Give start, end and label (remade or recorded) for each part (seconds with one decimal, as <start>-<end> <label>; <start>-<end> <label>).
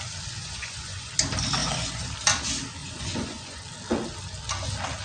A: 0.0-0.4 recorded; 0.4-1.1 remade; 1.1-1.6 recorded; 1.6-2.1 remade; 2.1-2.8 recorded; 2.8-3.6 remade; 3.6-5.0 recorded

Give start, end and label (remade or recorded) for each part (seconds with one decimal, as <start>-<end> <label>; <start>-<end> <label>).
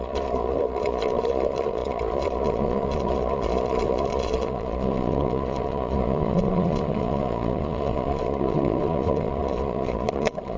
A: 0.0-10.6 remade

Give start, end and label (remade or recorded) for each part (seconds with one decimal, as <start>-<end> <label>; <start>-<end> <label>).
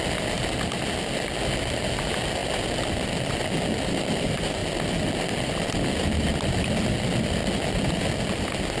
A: 0.0-8.8 recorded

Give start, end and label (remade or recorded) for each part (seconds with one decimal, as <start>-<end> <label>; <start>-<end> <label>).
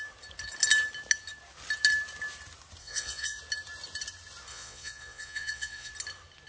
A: 0.0-2.8 recorded; 2.8-3.4 remade; 3.4-4.5 recorded; 4.5-5.9 remade; 5.9-6.5 recorded